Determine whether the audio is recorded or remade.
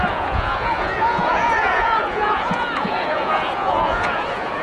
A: remade